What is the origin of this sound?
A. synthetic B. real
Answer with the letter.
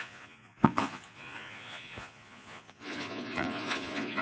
A